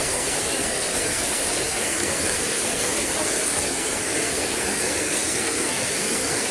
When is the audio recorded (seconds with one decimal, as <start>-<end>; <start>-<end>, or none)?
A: none

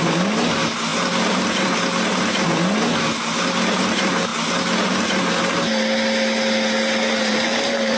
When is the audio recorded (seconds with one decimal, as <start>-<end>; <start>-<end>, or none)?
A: 0.0-8.0

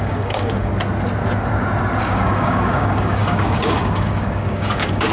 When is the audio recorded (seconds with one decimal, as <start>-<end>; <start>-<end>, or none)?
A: 0.7-2.0

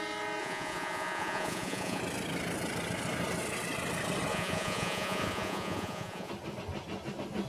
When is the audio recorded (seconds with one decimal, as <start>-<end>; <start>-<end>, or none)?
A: 0.0-0.4; 2.0-4.3; 6.3-7.5

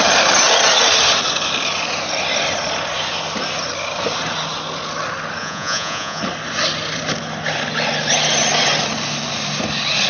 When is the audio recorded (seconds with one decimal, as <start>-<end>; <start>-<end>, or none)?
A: 0.0-5.4; 6.2-10.1